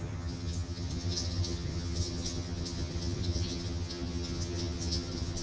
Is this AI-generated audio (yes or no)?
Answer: yes